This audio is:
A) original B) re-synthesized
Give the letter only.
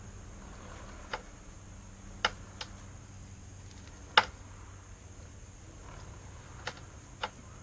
A